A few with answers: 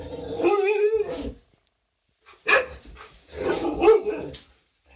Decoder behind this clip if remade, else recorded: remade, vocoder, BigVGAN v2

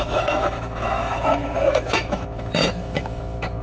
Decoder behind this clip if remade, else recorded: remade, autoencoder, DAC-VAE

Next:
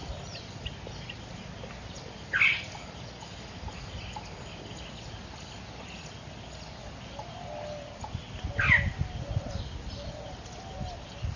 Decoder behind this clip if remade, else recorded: recorded